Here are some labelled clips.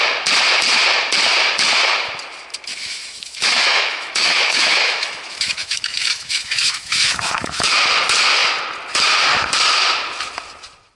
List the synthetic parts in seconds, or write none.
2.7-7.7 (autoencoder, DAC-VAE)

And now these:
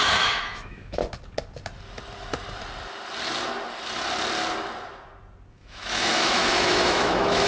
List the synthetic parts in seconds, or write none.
0.0-1.0 (autoencoder, DAC-VAE); 5.5-7.5

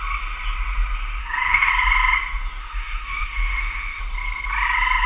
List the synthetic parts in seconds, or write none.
1.2-1.7 (autoencoder, DAC-VAE); 2.6-4.0

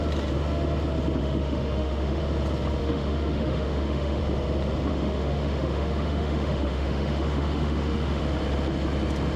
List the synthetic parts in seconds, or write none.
1.2-2.2 (autoencoder, DAC-VAE); 2.8-4.2; 4.9-8.2

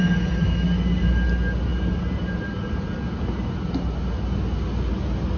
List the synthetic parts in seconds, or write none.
none

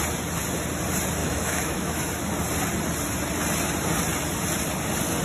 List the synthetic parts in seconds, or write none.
1.2-2.3 (autoencoder, DAC-VAE)

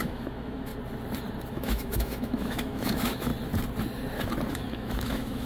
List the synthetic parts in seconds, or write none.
0.0-0.7 (autoencoder, DAC-VAE); 1.5-3.3; 4.5-5.5

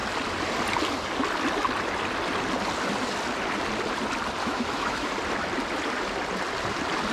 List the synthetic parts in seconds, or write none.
4.4-5.1 (autoencoder, DAC-VAE)